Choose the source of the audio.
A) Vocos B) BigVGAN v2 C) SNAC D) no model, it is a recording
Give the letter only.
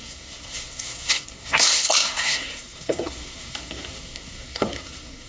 C